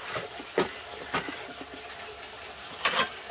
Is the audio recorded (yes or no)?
yes